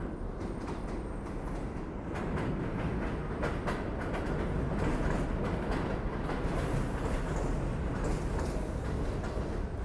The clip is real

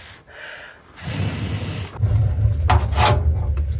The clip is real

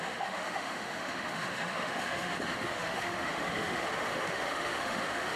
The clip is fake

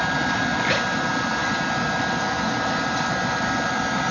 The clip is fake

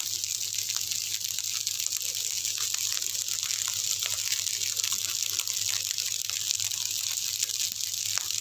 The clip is real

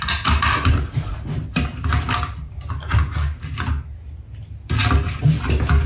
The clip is real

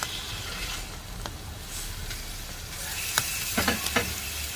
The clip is real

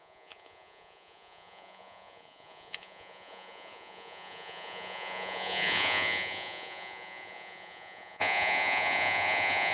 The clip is fake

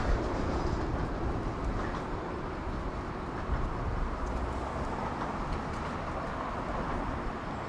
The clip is real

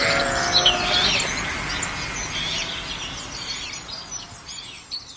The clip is real